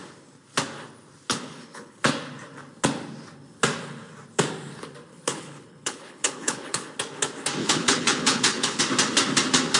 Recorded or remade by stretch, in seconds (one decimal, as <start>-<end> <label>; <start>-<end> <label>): 0.0-1.3 recorded; 1.3-2.1 remade; 2.1-5.1 recorded; 5.1-6.9 remade; 6.9-7.6 recorded; 7.6-8.8 remade; 8.8-9.8 recorded